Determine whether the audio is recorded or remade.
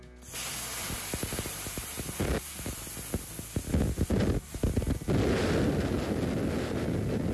recorded